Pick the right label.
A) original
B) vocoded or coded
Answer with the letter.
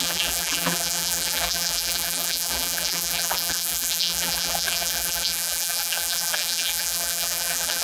B